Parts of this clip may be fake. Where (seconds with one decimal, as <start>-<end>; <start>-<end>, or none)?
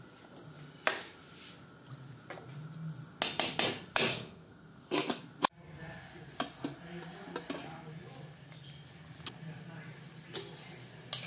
4.1-5.2